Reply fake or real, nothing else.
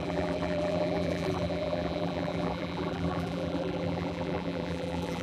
fake